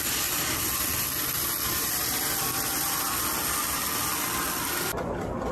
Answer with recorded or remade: recorded